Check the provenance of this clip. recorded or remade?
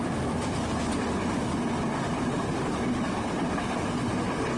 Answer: recorded